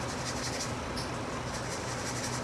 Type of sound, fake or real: real